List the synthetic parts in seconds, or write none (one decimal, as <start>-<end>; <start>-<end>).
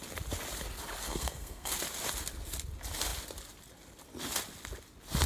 1.0-1.7